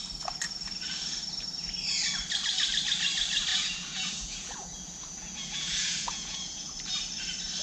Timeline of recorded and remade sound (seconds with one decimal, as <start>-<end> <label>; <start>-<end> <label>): 0.0-3.5 recorded; 3.5-6.8 remade; 6.8-7.6 recorded